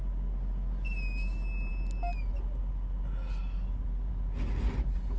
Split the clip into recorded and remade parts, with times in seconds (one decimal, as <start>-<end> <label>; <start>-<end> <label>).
0.0-5.2 recorded